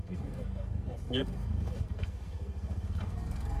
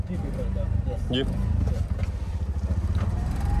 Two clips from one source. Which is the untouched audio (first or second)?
second